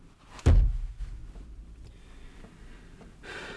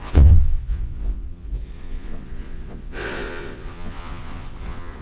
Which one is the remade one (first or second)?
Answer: second